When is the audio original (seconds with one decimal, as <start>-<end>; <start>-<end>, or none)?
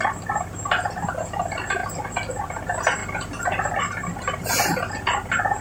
3.0-3.8